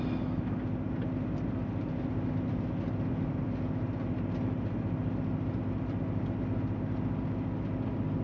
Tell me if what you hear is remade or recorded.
recorded